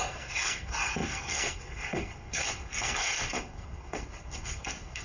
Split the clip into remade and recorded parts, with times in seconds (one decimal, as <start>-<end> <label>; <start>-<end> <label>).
0.0-5.0 remade